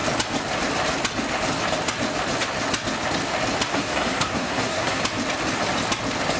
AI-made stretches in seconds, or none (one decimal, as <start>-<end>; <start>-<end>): 3.7-5.0